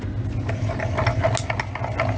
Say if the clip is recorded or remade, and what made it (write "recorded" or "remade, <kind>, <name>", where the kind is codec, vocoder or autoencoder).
recorded